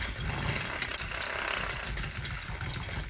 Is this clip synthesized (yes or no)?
no